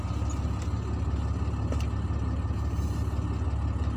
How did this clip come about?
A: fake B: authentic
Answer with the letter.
B